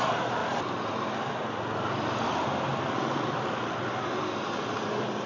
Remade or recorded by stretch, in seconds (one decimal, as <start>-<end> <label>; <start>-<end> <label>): 0.0-5.3 recorded